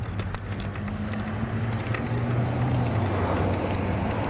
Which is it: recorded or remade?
recorded